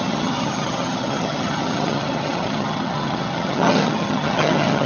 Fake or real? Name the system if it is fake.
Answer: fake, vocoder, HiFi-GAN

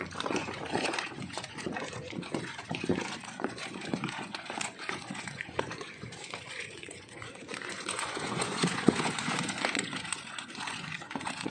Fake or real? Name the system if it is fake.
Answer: fake, vocoder, Vocos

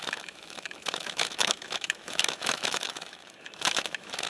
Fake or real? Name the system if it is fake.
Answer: fake, autoencoder, DAC-VAE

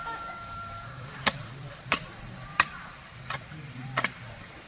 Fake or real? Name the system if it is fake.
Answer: fake, vocoder, BigVGAN v2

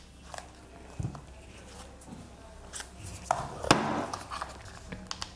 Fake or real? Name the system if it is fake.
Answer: real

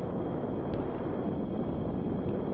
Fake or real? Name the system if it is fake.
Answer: real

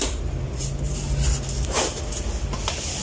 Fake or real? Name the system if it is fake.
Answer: real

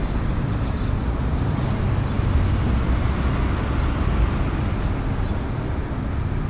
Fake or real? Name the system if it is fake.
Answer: real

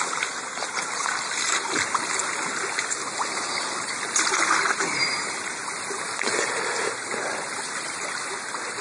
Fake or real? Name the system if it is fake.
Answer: real